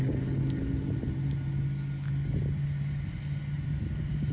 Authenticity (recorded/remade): recorded